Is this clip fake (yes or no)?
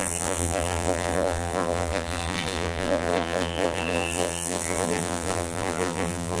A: yes